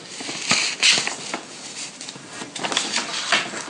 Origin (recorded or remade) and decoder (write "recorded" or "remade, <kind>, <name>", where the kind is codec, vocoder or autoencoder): recorded